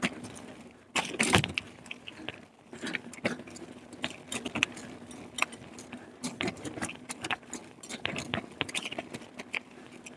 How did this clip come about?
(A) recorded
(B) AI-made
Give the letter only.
A